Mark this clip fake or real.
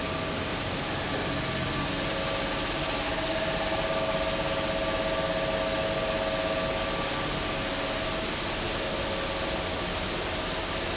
real